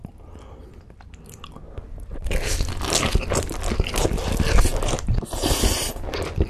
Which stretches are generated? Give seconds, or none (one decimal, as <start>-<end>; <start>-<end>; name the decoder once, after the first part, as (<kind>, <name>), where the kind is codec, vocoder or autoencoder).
none